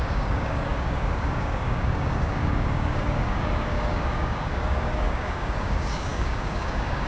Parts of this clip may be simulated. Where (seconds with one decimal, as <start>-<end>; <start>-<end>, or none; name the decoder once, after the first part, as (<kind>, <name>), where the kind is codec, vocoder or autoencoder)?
0.0-7.1 (codec, DAC)